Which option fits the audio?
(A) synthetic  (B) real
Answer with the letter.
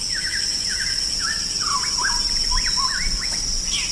B